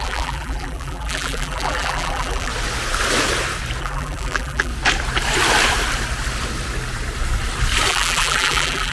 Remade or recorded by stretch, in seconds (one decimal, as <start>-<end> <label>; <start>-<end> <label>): 0.0-2.5 remade; 2.5-3.8 recorded; 3.8-4.7 remade; 4.7-7.9 recorded; 7.9-8.9 remade

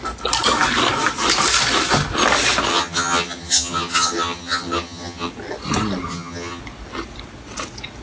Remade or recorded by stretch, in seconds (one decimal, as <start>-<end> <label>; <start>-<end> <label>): 0.0-2.7 recorded; 2.7-5.3 remade; 5.3-6.1 recorded; 6.1-6.6 remade; 6.6-8.0 recorded

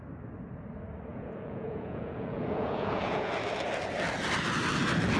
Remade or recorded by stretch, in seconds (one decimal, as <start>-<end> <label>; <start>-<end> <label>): 0.0-1.1 recorded; 1.1-3.3 remade; 3.3-5.2 recorded

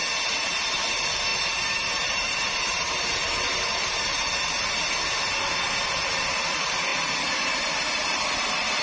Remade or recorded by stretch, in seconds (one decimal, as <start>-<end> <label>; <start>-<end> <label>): 0.0-1.3 recorded; 1.3-4.7 remade; 4.7-6.9 recorded; 6.9-7.7 remade; 7.7-8.8 recorded

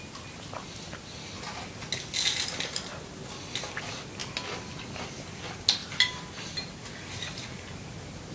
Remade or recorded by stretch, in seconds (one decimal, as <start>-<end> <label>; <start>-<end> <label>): 0.0-5.8 recorded; 5.8-6.3 remade; 6.3-8.3 recorded

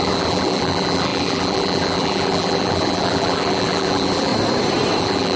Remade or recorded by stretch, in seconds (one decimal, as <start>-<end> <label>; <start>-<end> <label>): 0.0-4.3 remade; 4.3-5.0 recorded; 5.0-5.4 remade